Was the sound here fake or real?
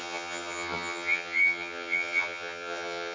fake